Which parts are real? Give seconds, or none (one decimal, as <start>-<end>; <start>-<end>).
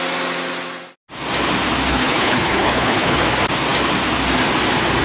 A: 0.0-1.9; 3.2-5.0